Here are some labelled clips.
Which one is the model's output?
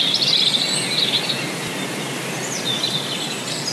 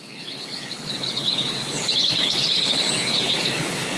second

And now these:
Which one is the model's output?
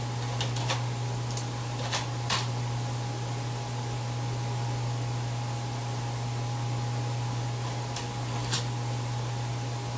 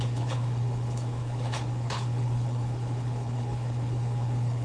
second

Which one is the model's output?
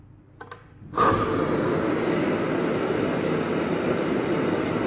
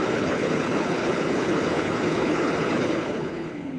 second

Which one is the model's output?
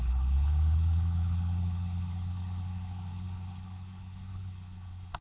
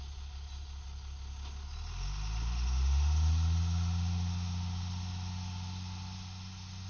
first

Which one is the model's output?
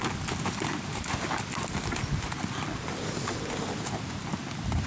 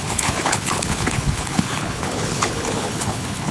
second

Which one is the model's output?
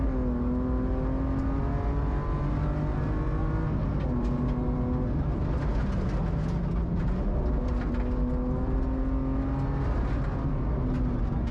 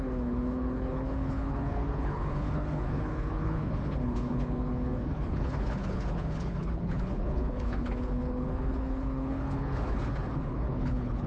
second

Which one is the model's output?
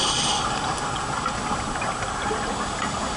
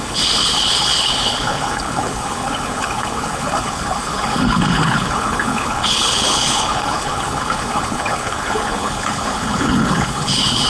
second